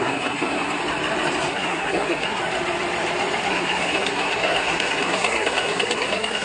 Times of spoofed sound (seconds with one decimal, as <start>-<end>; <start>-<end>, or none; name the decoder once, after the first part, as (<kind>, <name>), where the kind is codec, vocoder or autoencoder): 0.0-0.8 (codec, SNAC); 1.5-2.4; 3.5-6.4